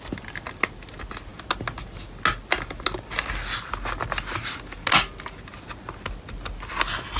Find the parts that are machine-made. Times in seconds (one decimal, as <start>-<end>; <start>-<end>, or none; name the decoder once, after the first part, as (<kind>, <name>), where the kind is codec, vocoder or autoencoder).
none